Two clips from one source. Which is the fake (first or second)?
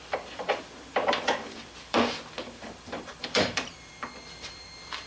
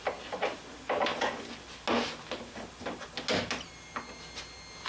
first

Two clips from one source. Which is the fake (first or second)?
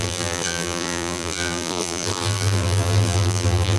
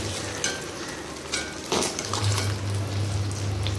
first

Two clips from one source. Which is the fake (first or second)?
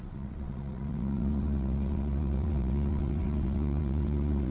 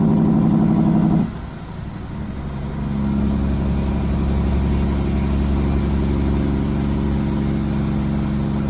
first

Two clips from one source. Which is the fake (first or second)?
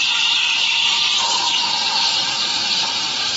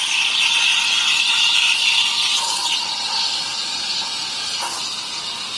first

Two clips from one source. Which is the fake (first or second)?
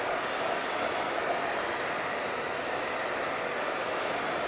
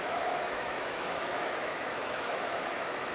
second